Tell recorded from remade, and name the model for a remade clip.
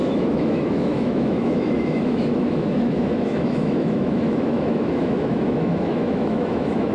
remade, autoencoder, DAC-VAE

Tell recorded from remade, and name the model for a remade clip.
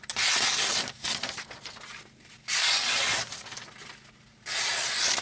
recorded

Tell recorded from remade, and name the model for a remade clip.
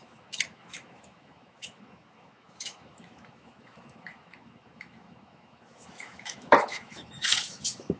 remade, autoencoder, DAC-VAE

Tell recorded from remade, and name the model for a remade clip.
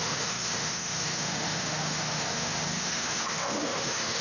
remade, autoencoder, DAC-VAE